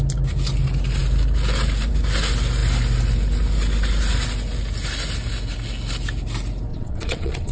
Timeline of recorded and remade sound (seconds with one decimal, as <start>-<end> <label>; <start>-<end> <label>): 0.0-6.7 recorded; 6.7-7.5 remade